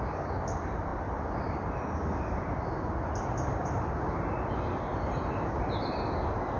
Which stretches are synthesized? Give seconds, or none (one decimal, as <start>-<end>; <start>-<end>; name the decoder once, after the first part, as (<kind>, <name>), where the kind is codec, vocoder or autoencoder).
none